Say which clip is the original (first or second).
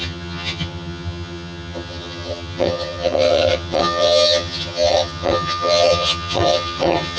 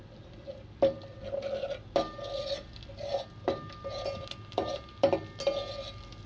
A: second